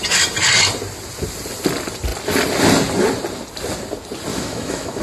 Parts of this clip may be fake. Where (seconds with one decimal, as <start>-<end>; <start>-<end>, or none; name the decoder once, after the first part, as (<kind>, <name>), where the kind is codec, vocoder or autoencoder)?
4.3-5.0 (autoencoder, DAC-VAE)